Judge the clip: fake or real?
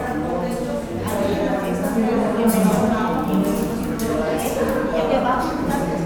real